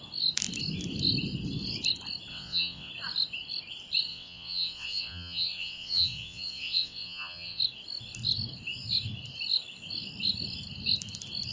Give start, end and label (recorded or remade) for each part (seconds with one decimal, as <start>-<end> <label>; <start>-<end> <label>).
0.0-2.3 recorded; 2.3-2.9 remade; 2.9-4.1 recorded; 4.1-7.6 remade; 7.6-11.5 recorded